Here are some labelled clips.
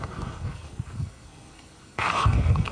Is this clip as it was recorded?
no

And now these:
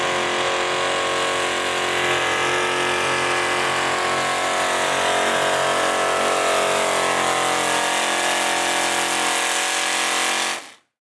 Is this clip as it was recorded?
yes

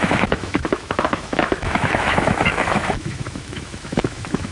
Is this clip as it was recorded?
no